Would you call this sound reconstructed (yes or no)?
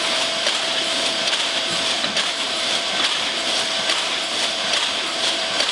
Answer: yes